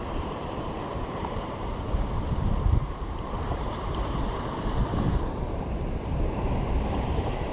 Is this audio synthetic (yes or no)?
yes